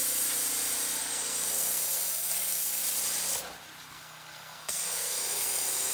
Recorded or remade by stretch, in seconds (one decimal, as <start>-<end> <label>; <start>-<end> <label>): 0.0-1.0 recorded; 1.0-2.8 remade; 2.8-3.9 recorded; 3.9-5.9 remade